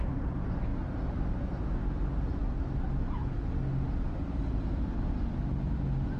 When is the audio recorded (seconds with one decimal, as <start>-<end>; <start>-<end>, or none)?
0.0-6.2